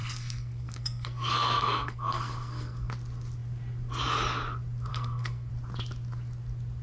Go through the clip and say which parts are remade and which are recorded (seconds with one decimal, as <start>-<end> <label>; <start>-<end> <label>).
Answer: 0.0-2.9 remade; 2.9-4.9 recorded; 4.9-5.5 remade; 5.5-6.8 recorded